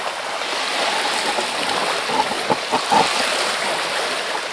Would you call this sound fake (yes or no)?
no